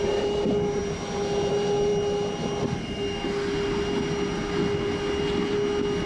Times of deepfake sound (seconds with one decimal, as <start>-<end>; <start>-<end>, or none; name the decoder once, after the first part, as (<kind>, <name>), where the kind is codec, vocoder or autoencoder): none